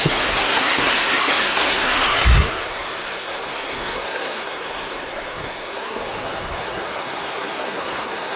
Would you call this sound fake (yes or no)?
yes